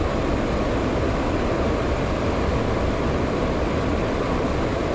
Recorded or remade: recorded